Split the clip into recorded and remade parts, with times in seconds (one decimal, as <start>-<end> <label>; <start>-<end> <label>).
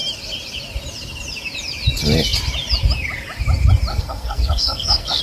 0.0-3.9 recorded; 3.9-5.2 remade